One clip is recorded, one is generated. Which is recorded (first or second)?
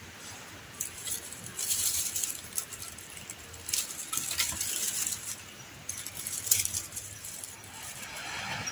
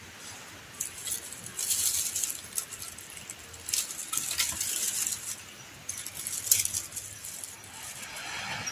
second